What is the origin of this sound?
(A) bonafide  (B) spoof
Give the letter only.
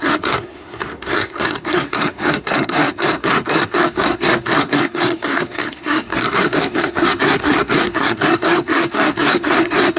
B